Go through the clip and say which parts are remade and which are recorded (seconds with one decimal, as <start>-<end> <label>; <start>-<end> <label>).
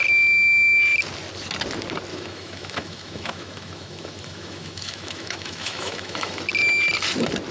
0.0-2.1 recorded; 2.1-6.4 remade; 6.4-7.5 recorded